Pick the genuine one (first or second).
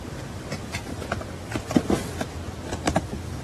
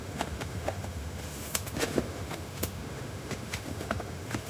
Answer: first